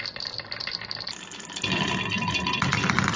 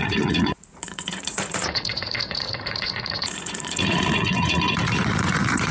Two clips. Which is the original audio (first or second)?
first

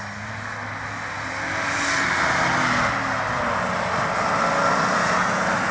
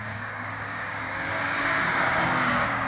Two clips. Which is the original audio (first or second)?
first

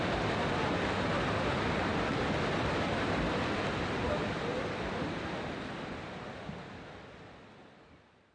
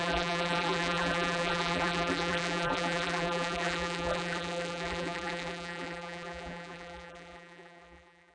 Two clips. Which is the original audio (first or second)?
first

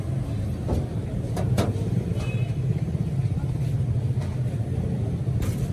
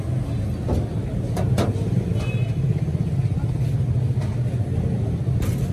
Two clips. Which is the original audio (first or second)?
second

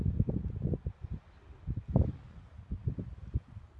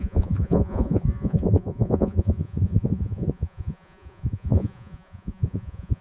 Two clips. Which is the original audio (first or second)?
first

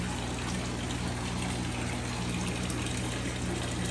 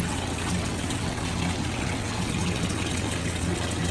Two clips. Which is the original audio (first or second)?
first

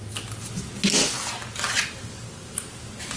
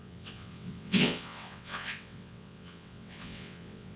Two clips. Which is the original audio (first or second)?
first